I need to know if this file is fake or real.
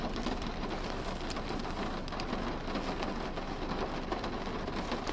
real